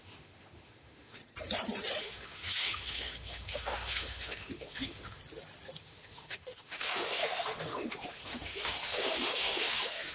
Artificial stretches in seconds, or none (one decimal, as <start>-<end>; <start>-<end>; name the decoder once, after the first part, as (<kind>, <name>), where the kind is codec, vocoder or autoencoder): 0.0-1.2 (autoencoder, DAC-VAE); 2.0-5.2; 5.8-10.1